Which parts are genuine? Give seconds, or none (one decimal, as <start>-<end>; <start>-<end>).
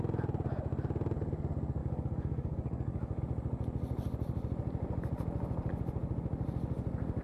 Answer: 0.0-1.8; 3.2-7.2